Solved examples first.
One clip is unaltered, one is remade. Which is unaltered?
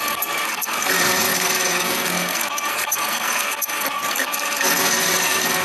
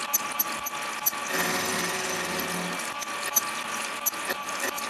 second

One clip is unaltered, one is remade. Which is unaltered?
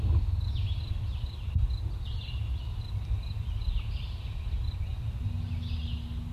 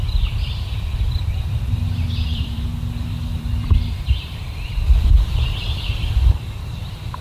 first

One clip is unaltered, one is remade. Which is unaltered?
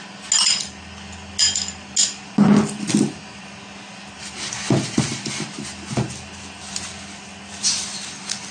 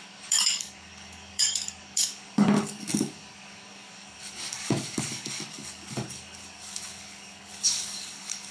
first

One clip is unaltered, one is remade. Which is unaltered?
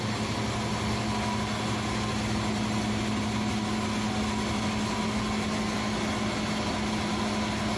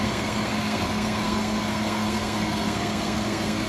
first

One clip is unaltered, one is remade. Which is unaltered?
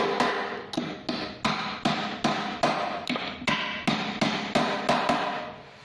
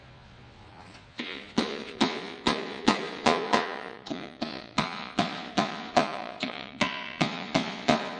first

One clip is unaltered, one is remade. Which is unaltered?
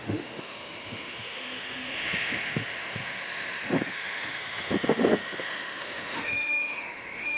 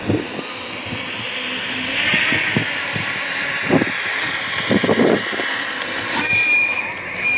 second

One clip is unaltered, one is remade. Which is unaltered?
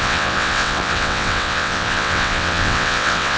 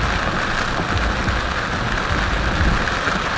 second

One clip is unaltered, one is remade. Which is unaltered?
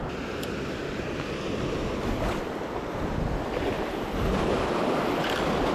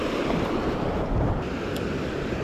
first